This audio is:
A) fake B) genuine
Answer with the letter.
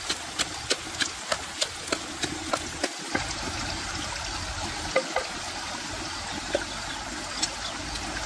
B